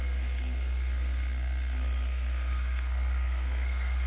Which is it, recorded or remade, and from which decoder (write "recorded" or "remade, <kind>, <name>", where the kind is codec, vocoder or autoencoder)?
remade, codec, SNAC